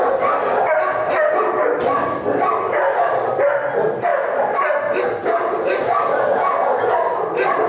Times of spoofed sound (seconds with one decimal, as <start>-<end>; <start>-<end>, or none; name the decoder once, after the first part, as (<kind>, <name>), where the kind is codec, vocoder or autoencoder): 4.1-5.0 (vocoder, BigVGAN v2)